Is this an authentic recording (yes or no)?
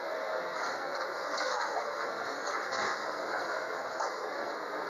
no